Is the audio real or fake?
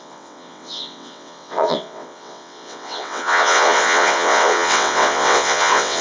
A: fake